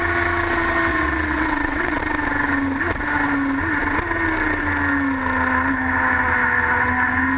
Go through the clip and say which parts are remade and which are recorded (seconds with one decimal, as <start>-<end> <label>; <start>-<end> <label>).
0.0-0.9 recorded; 0.9-2.0 remade; 2.0-7.4 recorded